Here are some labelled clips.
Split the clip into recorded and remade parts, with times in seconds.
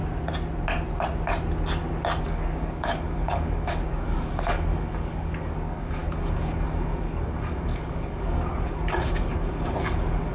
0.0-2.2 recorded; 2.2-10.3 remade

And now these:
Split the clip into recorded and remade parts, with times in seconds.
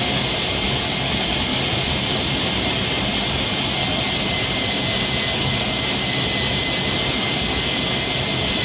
0.0-8.6 recorded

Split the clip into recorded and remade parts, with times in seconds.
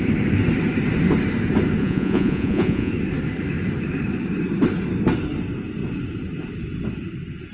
0.0-1.8 recorded; 1.8-2.9 remade; 2.9-7.5 recorded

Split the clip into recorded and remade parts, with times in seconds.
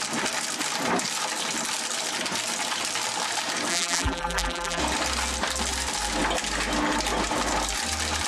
0.0-3.7 recorded; 3.7-4.8 remade; 4.8-8.3 recorded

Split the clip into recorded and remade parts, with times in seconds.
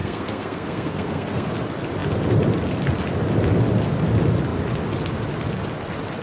0.0-1.5 remade; 1.5-6.2 recorded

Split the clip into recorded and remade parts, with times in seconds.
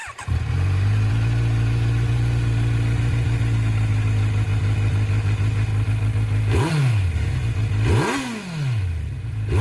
0.0-1.1 remade; 1.1-9.6 recorded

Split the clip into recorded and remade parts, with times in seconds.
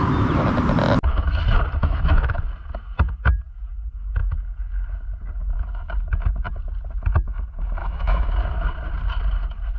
0.0-1.8 recorded; 1.8-2.4 remade; 2.4-7.8 recorded; 7.8-8.3 remade; 8.3-9.8 recorded